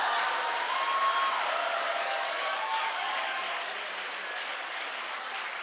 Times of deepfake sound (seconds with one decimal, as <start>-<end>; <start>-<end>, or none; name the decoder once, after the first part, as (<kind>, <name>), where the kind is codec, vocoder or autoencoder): 1.6-3.9 (codec, DAC); 4.3-5.0